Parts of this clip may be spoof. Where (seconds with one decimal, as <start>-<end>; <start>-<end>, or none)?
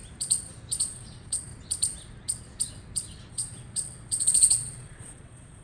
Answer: 0.8-1.5; 3.3-5.6